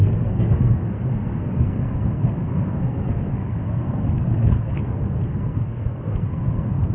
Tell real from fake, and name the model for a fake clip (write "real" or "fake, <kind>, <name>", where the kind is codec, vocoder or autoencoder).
fake, codec, SNAC